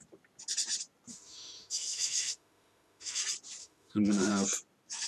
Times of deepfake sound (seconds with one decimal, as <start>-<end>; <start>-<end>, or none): 1.1-3.2; 3.6-4.3